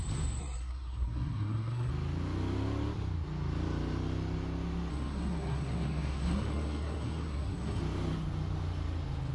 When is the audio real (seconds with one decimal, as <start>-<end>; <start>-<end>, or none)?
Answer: 0.0-0.4; 1.9-4.9; 7.8-9.3